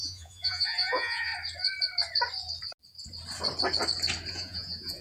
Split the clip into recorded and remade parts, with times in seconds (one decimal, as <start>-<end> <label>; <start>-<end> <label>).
0.0-1.3 remade; 1.3-4.3 recorded; 4.3-5.0 remade